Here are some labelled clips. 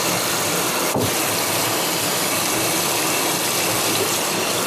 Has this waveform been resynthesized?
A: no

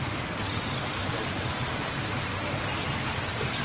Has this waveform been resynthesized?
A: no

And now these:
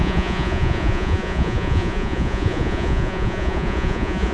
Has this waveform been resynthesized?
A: yes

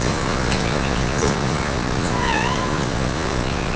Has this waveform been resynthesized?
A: yes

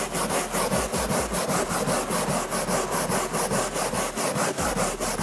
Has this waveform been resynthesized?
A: no